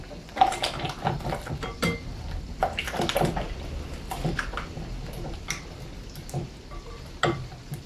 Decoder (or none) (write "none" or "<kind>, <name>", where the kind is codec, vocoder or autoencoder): none